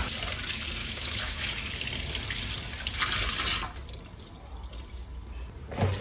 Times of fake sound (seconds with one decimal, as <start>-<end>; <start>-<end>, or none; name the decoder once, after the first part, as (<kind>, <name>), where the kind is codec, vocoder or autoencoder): 0.8-1.5 (autoencoder, DAC-VAE)